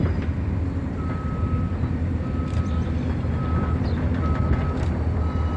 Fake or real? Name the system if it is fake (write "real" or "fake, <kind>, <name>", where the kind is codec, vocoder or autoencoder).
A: real